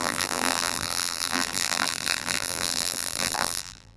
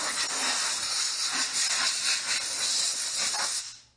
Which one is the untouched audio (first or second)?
second